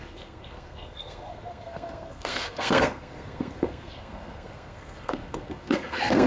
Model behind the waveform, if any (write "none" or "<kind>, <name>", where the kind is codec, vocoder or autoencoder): codec, SNAC